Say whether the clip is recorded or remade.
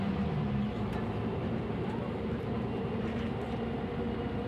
remade